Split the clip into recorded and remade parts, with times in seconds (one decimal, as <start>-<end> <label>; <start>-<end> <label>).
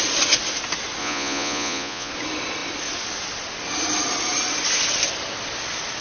0.0-1.0 recorded; 1.0-2.1 remade; 2.1-6.0 recorded